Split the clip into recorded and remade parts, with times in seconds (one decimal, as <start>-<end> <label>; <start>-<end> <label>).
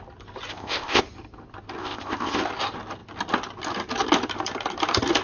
0.0-0.5 recorded; 0.5-1.0 remade; 1.0-1.8 recorded; 1.8-2.4 remade; 2.4-5.2 recorded